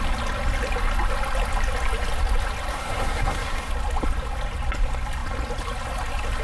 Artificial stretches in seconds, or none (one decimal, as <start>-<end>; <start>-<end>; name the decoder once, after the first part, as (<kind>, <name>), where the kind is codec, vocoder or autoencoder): 2.7-3.7 (codec, SNAC)